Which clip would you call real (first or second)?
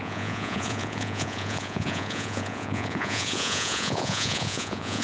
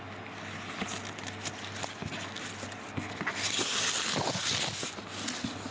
second